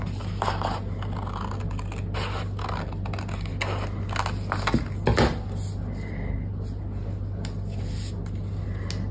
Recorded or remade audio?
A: recorded